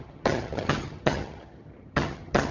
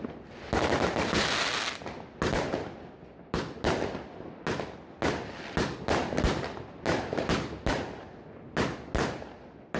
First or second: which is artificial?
first